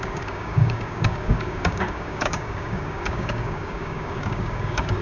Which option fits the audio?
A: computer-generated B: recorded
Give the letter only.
A